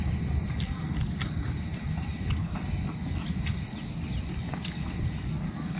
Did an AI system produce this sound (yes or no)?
no